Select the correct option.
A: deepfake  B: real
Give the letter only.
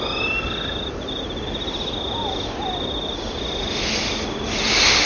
B